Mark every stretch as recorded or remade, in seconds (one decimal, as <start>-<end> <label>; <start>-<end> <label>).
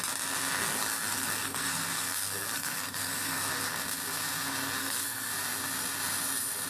0.0-0.7 recorded; 0.7-3.5 remade; 3.5-4.8 recorded; 4.8-5.3 remade; 5.3-6.7 recorded